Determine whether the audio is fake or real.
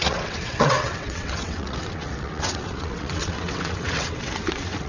fake